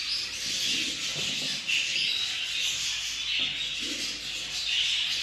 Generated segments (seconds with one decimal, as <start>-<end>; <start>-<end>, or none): none